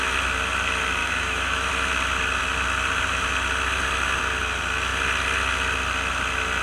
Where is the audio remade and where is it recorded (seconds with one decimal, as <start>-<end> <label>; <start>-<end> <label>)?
0.0-1.0 recorded; 1.0-1.7 remade; 1.7-6.6 recorded